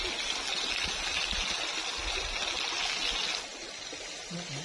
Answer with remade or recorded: recorded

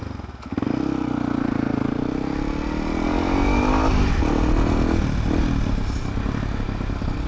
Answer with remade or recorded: recorded